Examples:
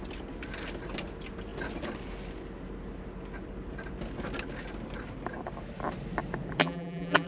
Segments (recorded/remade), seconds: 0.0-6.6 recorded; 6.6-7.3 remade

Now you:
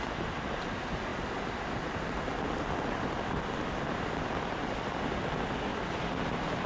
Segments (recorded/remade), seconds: 0.0-6.7 recorded

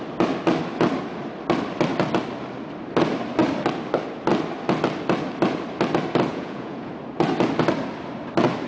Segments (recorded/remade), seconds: 0.0-6.3 recorded; 6.3-6.9 remade; 6.9-8.7 recorded

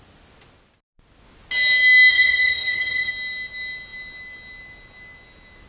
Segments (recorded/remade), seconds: 0.0-2.1 recorded; 2.1-3.1 remade; 3.1-5.7 recorded

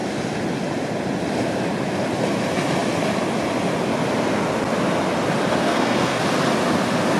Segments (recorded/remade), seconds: 0.0-5.6 recorded; 5.6-6.2 remade; 6.2-7.2 recorded

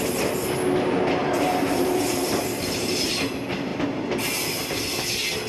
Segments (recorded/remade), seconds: 0.0-1.2 recorded; 1.2-3.1 remade; 3.1-5.5 recorded

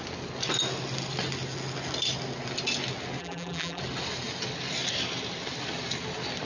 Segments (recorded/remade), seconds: 0.0-3.2 recorded; 3.2-3.8 remade; 3.8-6.5 recorded